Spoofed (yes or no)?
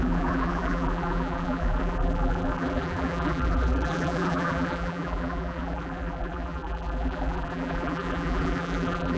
yes